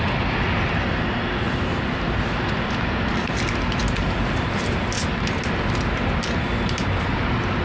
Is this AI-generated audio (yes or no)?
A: no